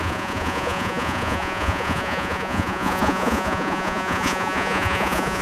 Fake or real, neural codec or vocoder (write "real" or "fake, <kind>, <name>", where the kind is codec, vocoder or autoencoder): fake, vocoder, Vocos